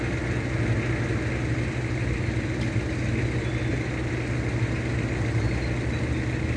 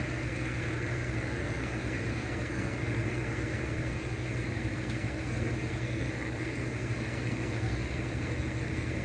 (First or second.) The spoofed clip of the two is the second